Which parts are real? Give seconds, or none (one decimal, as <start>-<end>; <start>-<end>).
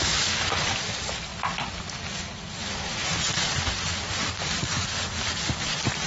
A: 1.3-2.1